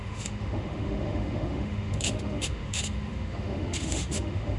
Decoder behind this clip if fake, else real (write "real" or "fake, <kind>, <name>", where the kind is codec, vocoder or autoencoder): fake, autoencoder, DAC-VAE